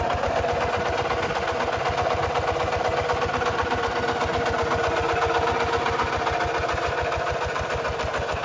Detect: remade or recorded recorded